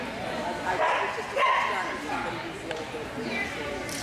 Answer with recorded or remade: recorded